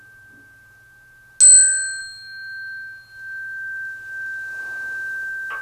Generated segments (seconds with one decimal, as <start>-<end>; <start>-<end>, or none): none